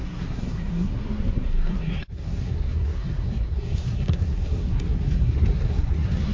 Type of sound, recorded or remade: remade